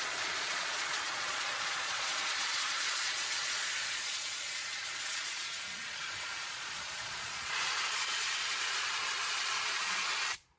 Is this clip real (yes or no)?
no